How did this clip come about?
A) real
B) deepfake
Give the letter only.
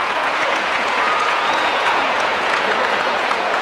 B